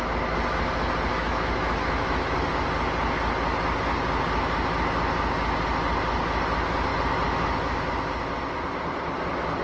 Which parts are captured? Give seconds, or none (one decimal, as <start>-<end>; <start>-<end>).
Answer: 0.0-1.1; 2.6-9.6